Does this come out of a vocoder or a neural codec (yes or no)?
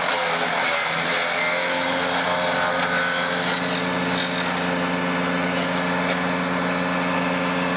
no